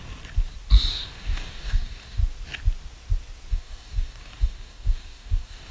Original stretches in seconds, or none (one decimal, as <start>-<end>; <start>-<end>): 0.0-0.9; 2.2-3.5